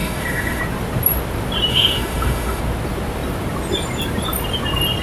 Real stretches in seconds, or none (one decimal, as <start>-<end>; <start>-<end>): 0.6-1.7; 2.6-5.0